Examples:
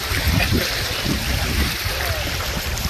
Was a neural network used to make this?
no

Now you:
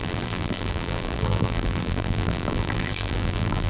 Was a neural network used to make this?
yes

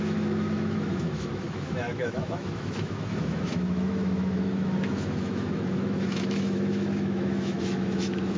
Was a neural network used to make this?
yes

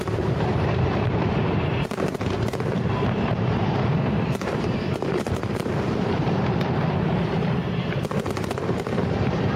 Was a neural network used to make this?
yes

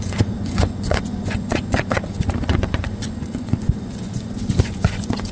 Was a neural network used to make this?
yes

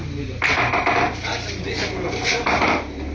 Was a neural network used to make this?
no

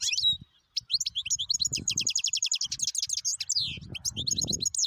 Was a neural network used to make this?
no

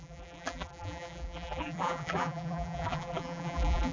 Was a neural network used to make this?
yes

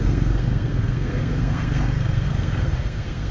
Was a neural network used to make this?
yes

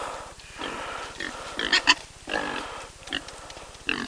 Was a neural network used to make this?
no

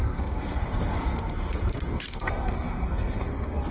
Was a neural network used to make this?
yes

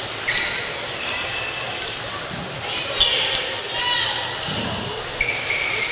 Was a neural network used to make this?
no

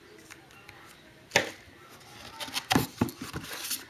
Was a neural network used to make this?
no